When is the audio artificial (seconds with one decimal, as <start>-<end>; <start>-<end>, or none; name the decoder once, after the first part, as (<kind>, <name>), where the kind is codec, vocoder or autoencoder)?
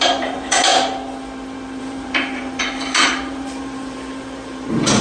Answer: 0.0-0.7 (vocoder, BigVGAN v2); 1.8-5.0